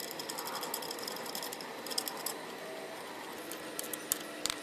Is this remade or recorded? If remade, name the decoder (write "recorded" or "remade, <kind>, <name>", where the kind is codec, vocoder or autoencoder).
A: recorded